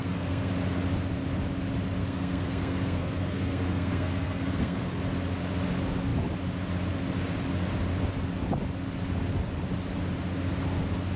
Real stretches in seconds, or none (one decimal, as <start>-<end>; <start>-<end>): 0.5-2.0; 5.0-11.2